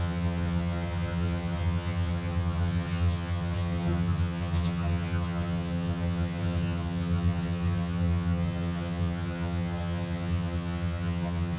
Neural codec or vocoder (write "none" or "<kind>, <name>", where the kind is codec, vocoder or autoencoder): vocoder, HiFi-GAN